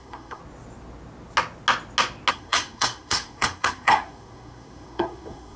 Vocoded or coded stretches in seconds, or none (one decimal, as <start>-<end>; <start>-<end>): 0.0-0.4; 2.3-5.6